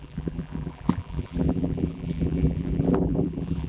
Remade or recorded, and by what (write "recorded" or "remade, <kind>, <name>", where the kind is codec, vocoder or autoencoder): remade, vocoder, BigVGAN v2